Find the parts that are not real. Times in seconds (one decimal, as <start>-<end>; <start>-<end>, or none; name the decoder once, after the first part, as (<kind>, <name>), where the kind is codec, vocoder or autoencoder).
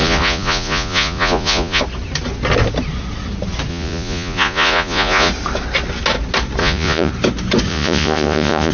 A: 0.0-1.8 (vocoder, Vocos); 3.7-5.3; 6.6-7.1; 7.7-8.7